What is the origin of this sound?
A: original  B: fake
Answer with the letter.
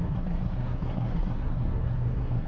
B